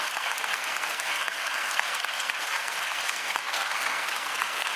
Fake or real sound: fake